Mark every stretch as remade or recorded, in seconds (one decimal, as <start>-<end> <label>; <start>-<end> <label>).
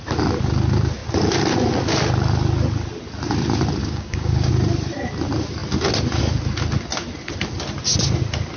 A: 0.0-3.8 recorded; 3.8-4.5 remade; 4.5-8.6 recorded